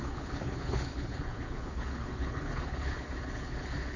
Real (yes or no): no